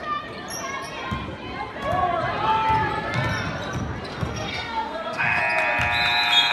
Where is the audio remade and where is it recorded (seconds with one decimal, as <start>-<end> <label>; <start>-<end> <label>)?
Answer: 0.0-4.1 recorded; 4.1-5.4 remade; 5.4-6.5 recorded